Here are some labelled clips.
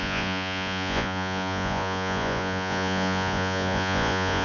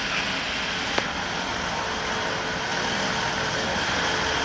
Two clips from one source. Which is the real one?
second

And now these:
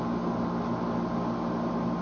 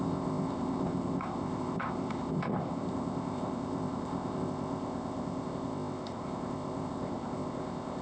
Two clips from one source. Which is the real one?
first